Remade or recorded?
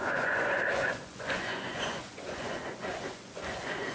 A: remade